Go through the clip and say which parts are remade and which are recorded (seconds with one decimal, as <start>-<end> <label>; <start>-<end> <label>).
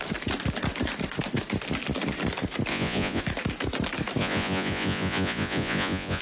0.0-2.7 recorded; 2.7-3.2 remade; 3.2-4.2 recorded; 4.2-6.2 remade